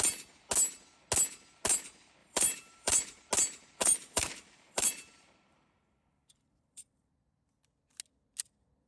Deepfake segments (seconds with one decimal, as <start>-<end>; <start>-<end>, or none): 2.2-3.2; 3.8-7.1

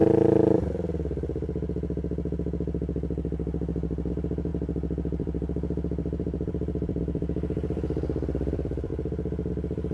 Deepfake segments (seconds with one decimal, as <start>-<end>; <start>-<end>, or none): 4.1-8.9; 9.5-9.9

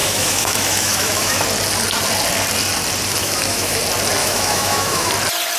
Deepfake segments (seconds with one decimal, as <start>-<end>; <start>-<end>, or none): 0.0-1.4; 3.2-3.8; 4.2-5.1

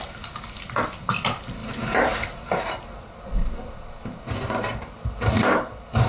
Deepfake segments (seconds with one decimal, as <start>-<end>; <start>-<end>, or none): none

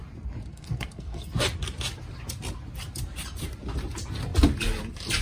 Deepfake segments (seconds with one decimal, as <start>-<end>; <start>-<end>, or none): 0.5-1.3

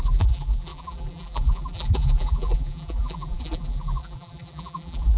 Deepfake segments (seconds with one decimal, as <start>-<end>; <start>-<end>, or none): 0.0-5.2

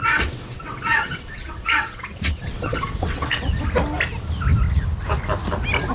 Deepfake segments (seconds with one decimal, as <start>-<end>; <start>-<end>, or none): 0.0-3.5